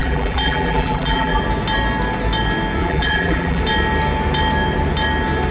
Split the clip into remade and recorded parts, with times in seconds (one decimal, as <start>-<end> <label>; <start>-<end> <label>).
0.0-1.4 remade; 1.4-2.8 recorded; 2.8-3.6 remade; 3.6-5.5 recorded